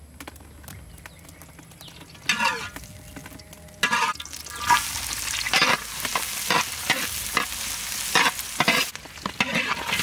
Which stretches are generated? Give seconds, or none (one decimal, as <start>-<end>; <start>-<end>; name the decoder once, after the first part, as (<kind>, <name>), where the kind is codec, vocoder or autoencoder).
none